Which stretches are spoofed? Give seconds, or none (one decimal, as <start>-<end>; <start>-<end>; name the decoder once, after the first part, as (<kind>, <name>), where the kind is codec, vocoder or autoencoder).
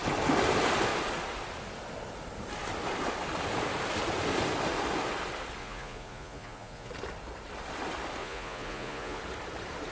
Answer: 5.6-6.9 (vocoder, Vocos); 8.2-9.2